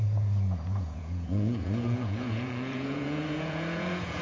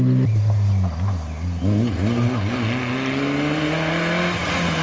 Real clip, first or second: second